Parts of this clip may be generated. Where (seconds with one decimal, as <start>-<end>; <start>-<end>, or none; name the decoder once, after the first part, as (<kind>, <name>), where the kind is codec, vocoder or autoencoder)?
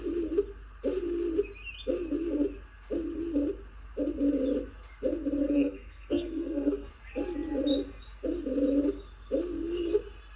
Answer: 5.4-6.9 (codec, SNAC)